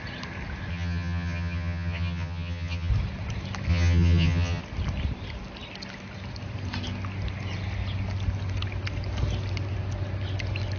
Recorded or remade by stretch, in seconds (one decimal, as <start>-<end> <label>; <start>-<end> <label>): 0.0-0.7 recorded; 0.7-2.9 remade; 2.9-3.7 recorded; 3.7-4.6 remade; 4.6-10.8 recorded